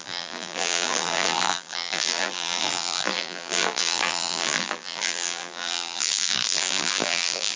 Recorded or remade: remade